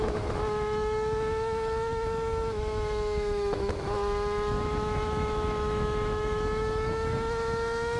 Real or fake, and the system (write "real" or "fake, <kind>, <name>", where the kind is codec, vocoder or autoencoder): fake, autoencoder, DAC-VAE